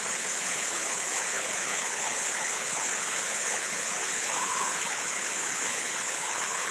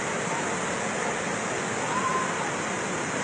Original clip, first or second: second